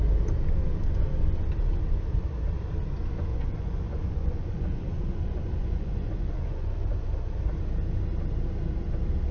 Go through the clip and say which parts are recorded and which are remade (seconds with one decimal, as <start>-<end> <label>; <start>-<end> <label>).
0.0-3.3 recorded; 3.3-7.1 remade; 7.1-9.3 recorded